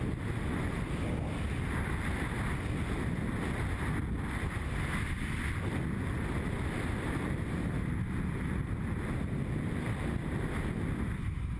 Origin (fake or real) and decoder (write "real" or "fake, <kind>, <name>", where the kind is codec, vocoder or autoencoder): real